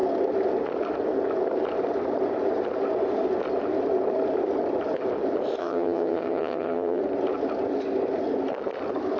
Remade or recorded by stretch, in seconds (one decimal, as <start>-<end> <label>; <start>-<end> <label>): 0.0-5.6 recorded; 5.6-7.0 remade; 7.0-9.2 recorded